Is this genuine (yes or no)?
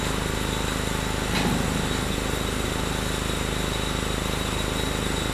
yes